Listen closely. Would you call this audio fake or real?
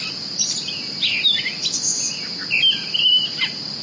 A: real